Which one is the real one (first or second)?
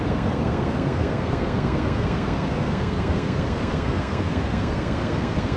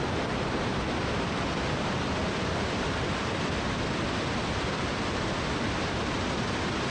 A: second